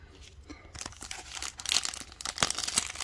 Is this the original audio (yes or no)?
yes